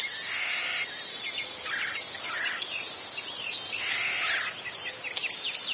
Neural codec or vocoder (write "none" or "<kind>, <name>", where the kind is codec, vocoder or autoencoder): none